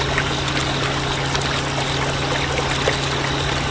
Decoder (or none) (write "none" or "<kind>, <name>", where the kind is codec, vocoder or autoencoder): none